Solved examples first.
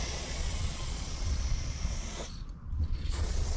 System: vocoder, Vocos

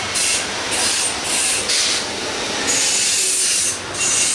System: none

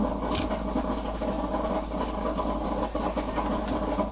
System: none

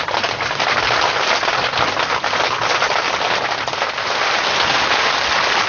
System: none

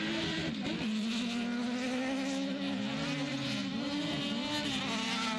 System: none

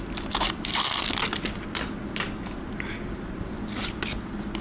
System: none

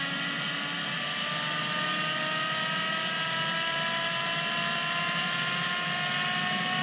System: none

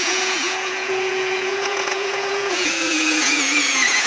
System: vocoder, Vocos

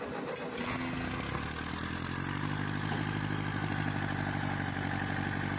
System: none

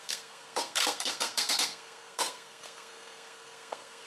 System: codec, SNAC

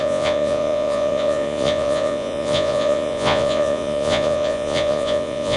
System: vocoder, Vocos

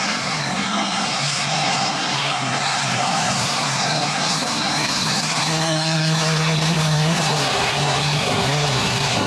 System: codec, SNAC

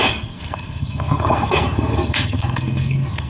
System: codec, SNAC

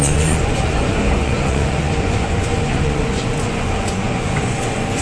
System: vocoder, Vocos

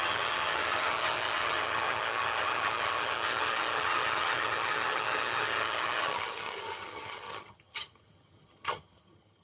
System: vocoder, HiFi-GAN